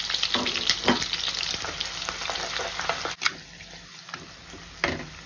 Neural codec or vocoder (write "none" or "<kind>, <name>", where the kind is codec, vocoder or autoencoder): none